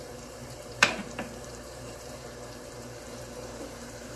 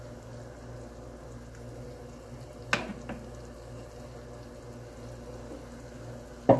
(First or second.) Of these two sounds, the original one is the second